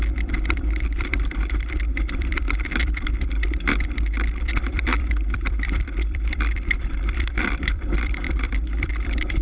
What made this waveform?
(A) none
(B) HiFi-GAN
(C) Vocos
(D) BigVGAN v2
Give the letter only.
D